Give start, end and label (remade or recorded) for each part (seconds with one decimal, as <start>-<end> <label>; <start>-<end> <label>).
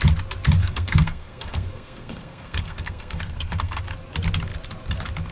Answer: 0.0-0.6 recorded; 0.6-3.8 remade; 3.8-5.3 recorded